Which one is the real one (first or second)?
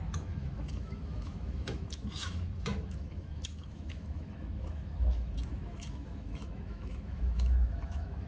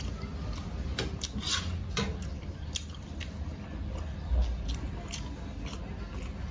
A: second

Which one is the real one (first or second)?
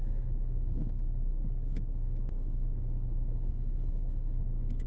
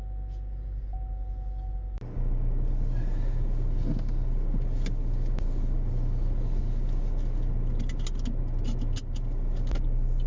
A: second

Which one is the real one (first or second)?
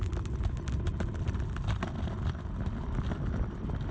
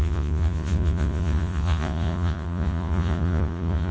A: first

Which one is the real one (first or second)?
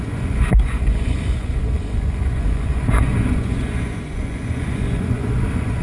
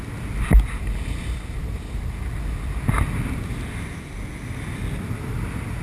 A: second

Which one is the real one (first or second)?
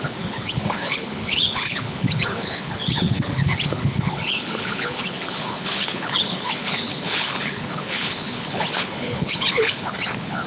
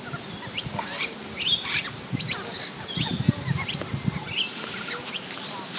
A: second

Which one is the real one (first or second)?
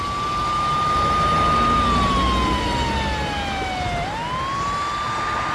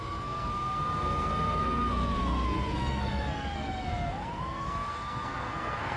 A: first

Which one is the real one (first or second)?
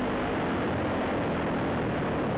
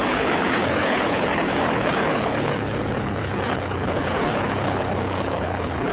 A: first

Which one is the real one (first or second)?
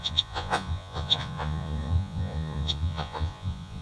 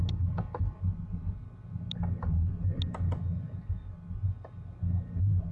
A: second